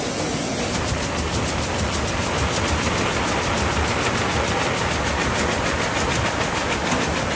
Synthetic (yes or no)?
no